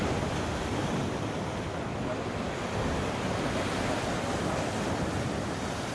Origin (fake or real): real